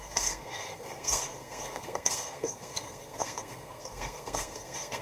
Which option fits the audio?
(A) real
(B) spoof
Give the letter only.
B